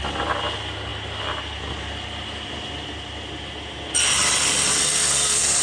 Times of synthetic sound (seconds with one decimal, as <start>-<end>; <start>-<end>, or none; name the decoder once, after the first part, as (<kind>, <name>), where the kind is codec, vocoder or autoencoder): 4.7-5.6 (codec, SNAC)